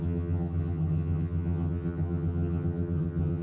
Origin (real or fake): fake